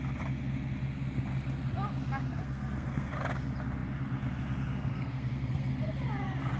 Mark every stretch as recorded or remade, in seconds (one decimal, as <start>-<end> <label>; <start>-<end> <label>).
0.0-2.4 recorded; 2.4-3.1 remade; 3.1-4.9 recorded; 4.9-5.7 remade; 5.7-6.6 recorded